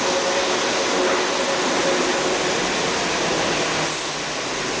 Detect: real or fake real